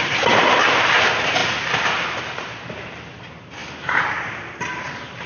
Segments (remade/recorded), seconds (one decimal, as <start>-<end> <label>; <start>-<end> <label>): 0.0-1.4 remade; 1.4-3.2 recorded; 3.2-5.3 remade